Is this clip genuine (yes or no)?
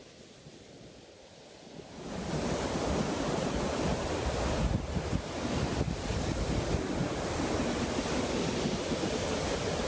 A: yes